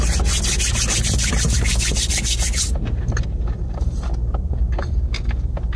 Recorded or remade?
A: recorded